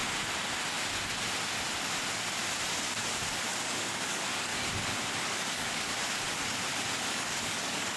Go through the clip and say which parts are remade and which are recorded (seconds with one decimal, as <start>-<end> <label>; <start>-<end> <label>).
0.0-3.3 recorded; 3.3-4.5 remade; 4.5-5.2 recorded; 5.2-5.9 remade; 5.9-7.1 recorded; 7.1-8.0 remade